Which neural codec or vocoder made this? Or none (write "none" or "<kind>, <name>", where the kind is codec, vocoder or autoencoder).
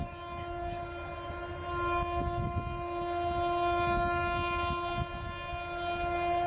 none